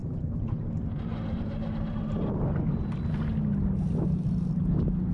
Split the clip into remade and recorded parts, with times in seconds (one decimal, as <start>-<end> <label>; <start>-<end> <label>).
0.0-2.4 remade; 2.4-5.1 recorded